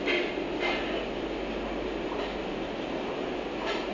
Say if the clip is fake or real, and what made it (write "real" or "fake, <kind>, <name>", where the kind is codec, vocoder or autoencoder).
real